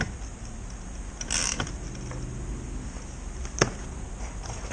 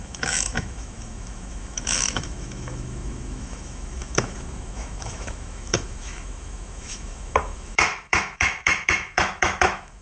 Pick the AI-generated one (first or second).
second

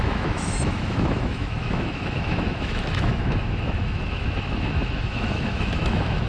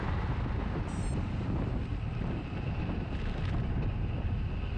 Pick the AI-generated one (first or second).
first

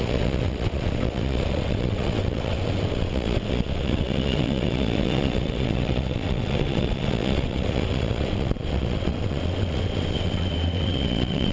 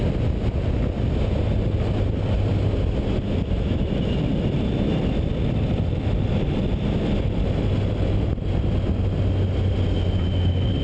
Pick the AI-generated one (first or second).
first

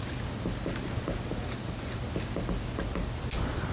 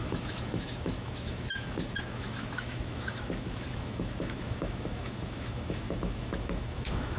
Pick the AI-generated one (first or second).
second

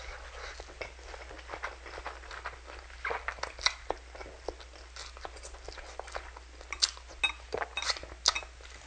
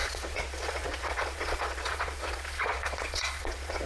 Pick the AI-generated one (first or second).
second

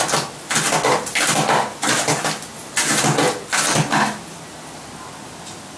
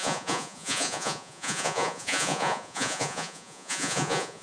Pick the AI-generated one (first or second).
second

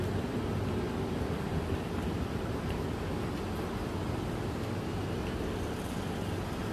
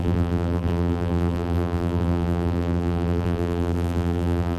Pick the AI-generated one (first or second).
second